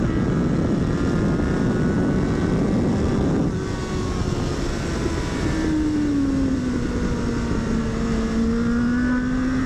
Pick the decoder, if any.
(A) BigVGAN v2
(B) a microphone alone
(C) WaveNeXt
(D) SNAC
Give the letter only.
B